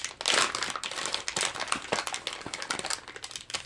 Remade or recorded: recorded